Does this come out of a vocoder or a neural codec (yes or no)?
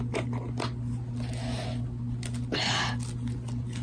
no